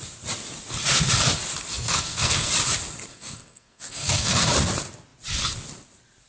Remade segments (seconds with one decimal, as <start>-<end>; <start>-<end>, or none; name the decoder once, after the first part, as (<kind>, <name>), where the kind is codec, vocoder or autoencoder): 1.7-2.5 (codec, SNAC); 3.1-4.5